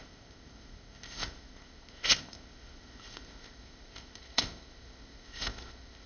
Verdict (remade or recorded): remade